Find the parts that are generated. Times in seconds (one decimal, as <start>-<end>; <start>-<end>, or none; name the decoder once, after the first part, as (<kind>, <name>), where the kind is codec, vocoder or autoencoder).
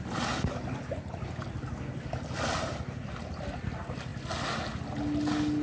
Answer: none